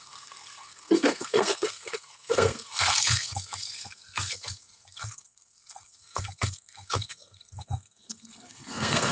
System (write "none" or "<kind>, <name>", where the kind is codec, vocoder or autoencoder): codec, SNAC